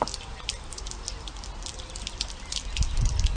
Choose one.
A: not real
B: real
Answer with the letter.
B